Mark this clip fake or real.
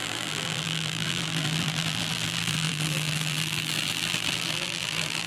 fake